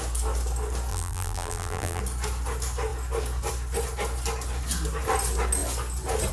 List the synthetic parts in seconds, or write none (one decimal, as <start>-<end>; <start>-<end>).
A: 0.9-2.0